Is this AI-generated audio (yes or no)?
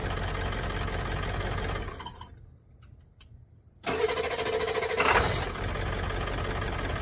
no